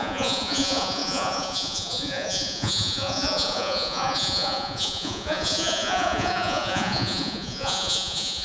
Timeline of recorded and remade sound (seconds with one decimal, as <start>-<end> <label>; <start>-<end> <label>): 0.0-8.4 remade